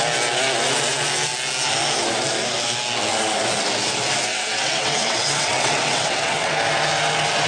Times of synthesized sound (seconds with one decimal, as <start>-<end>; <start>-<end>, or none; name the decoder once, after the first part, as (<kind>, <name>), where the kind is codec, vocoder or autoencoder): 4.3-6.5 (vocoder, WaveNeXt)